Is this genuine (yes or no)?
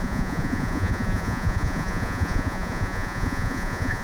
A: no